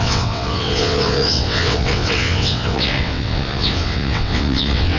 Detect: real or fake fake